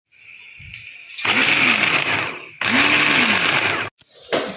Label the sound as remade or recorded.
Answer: recorded